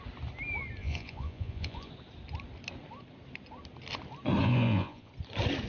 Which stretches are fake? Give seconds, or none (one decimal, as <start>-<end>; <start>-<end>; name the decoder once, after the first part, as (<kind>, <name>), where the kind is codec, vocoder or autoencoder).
0.8-1.9 (vocoder, Vocos); 4.4-5.1